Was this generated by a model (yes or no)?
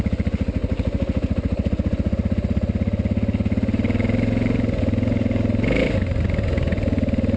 no